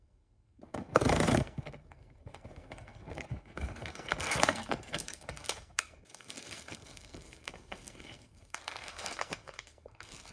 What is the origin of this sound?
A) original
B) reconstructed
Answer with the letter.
B